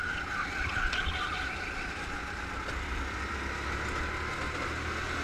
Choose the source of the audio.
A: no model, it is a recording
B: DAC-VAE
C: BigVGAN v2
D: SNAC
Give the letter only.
A